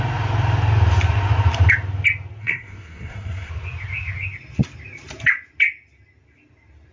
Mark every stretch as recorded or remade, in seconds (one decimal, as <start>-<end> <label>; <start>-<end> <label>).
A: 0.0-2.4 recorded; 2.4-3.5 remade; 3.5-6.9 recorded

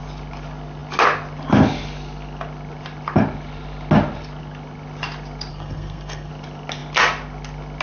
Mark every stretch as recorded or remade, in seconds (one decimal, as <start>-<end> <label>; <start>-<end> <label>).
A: 0.0-5.5 recorded; 5.5-6.3 remade; 6.3-7.8 recorded

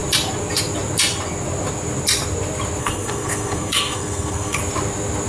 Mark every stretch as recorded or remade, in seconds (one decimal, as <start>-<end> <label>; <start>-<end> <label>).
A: 0.0-2.8 recorded; 2.8-4.6 remade; 4.6-5.3 recorded

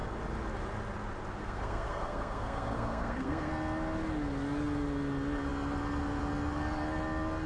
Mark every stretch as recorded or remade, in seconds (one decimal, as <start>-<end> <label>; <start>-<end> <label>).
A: 0.0-1.4 recorded; 1.4-3.5 remade; 3.5-7.5 recorded

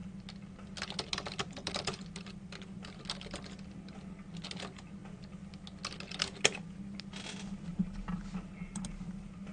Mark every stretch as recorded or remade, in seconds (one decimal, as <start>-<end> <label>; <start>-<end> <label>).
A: 0.0-9.5 recorded

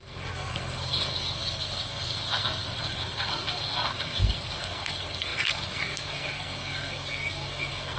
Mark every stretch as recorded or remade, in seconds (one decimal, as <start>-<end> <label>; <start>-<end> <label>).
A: 0.0-8.0 remade